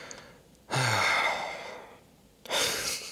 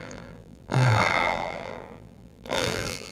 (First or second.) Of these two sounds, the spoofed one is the second